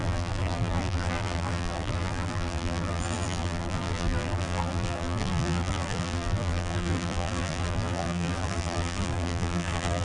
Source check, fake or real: fake